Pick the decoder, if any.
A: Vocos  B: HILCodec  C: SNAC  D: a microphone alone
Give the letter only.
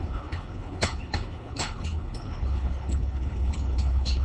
B